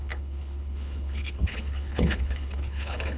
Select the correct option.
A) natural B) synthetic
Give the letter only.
B